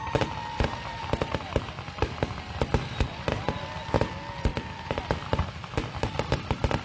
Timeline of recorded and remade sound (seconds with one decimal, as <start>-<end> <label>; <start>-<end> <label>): 0.0-6.8 recorded